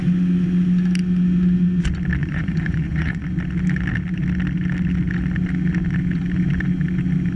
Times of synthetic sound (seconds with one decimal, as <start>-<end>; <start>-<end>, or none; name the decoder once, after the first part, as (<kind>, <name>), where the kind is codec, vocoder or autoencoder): 2.2-3.2 (vocoder, Vocos)